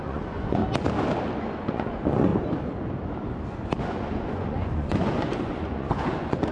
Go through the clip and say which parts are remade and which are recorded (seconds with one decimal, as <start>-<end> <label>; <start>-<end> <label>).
0.0-0.6 remade; 0.6-1.4 recorded; 1.4-2.3 remade; 2.3-3.8 recorded; 3.8-6.5 remade